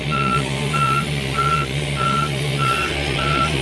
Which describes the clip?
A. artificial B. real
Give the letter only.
A